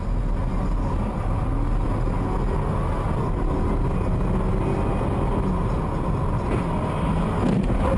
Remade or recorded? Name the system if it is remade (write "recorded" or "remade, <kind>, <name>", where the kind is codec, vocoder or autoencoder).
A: recorded